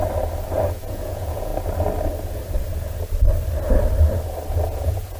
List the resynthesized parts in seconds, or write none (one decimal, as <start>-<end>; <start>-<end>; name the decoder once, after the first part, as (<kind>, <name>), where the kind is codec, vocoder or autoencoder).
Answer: 0.7-1.5 (vocoder, Vocos); 4.6-5.2

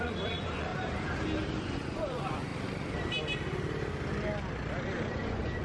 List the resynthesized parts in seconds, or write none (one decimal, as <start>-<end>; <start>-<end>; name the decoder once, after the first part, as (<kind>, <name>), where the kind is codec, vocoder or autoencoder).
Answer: 0.0-0.7 (vocoder, Vocos); 1.6-2.5; 5.1-5.6